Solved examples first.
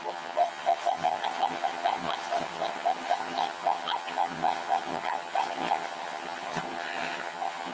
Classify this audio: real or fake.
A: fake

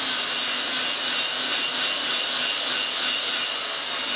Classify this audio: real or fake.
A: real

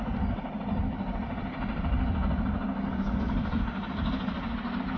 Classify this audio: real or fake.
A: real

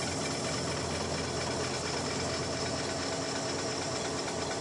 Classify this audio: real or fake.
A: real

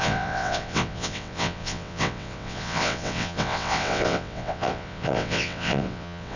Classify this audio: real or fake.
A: fake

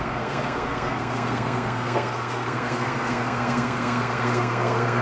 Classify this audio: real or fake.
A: fake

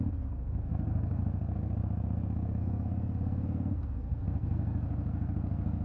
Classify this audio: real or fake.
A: fake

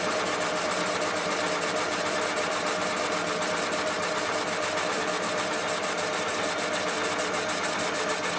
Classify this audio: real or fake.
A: real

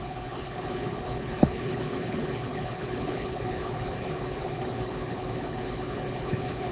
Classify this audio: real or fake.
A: fake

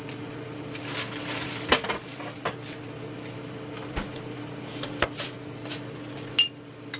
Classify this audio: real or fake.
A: real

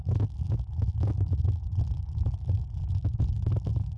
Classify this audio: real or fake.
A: fake